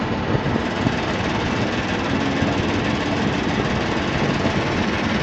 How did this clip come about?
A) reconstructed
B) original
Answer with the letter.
B